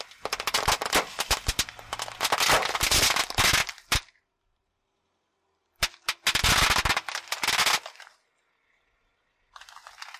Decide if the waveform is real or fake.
real